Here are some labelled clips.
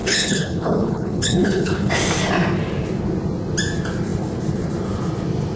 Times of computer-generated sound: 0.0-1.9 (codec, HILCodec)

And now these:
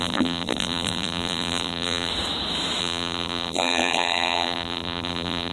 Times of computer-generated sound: 0.0-2.1 (vocoder, BigVGAN v2); 2.8-5.5

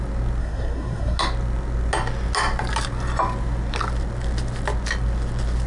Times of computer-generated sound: 0.4-1.2 (codec, SNAC)

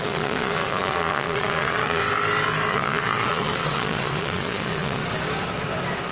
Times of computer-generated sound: 0.0-2.0 (vocoder, Vocos); 2.7-5.0

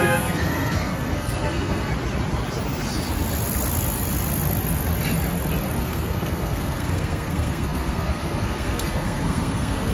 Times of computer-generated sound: 0.0-1.9 (codec, SNAC); 5.8-9.9